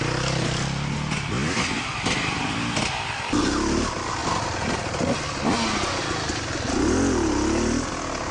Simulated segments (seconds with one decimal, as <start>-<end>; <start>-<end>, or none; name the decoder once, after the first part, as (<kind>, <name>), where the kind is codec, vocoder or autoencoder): 1.4-3.4 (vocoder, BigVGAN v2)